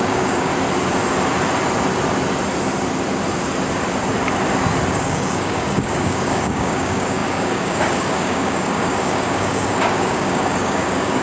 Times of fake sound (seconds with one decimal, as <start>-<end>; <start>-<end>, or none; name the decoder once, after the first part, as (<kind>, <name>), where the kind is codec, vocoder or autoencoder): 0.0-0.5 (codec, DAC); 4.9-11.2